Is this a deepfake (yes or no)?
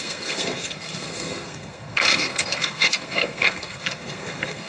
yes